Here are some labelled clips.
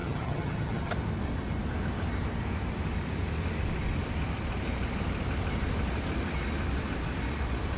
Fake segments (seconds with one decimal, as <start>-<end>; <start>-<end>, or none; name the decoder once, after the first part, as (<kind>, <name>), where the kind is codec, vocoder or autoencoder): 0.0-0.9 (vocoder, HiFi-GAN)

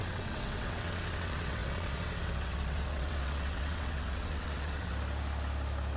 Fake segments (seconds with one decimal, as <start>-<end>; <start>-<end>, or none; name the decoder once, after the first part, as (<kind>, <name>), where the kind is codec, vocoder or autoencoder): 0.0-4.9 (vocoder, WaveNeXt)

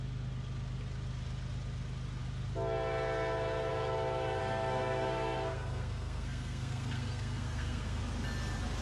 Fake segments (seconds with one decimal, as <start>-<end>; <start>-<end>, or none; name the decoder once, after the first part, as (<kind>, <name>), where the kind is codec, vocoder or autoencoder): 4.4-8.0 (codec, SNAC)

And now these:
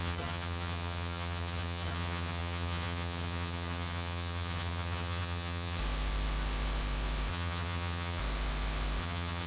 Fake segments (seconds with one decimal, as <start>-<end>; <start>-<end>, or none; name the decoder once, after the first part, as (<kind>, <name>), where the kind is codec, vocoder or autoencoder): 0.0-5.8 (vocoder, HiFi-GAN); 7.3-8.2; 9.0-9.5

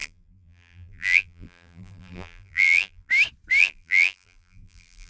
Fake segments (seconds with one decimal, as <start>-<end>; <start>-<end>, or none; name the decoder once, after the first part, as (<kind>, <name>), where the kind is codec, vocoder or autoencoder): 0.0-3.1 (vocoder, BigVGAN v2); 3.6-5.1

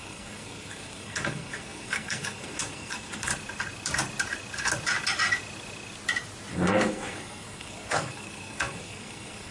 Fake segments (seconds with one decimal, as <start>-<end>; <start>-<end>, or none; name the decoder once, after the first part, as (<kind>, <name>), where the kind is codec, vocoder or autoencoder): 0.0-3.3 (codec, SNAC); 6.5-9.5